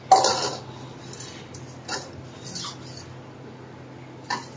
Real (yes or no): yes